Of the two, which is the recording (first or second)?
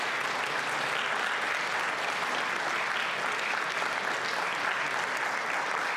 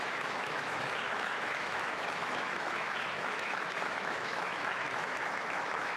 first